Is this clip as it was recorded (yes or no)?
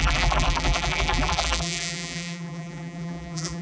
no